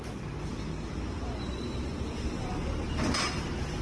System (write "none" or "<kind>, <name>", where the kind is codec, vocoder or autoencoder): none